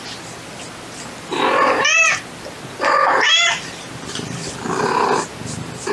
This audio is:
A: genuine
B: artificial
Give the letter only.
A